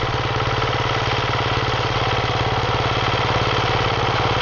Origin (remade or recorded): recorded